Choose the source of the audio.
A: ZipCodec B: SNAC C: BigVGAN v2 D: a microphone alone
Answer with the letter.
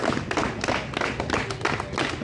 D